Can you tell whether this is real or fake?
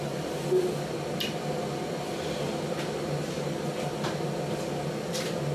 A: real